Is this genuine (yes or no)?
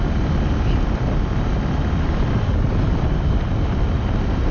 yes